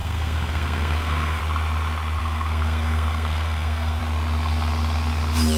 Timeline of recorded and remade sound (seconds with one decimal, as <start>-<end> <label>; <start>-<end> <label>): 0.0-1.4 remade; 1.4-2.2 recorded; 2.2-4.0 remade; 4.0-5.6 recorded